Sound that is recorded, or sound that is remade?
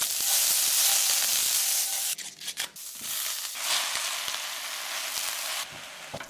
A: recorded